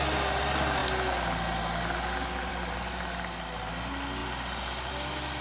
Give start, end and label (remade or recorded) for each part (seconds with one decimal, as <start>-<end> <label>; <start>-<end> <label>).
0.0-5.4 recorded